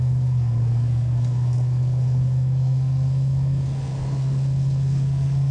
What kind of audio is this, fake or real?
fake